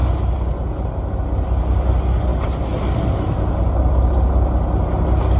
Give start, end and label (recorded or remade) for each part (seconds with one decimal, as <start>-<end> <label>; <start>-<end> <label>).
0.0-5.4 recorded